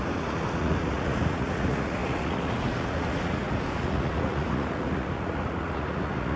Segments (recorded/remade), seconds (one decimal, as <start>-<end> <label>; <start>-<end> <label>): 0.0-6.4 remade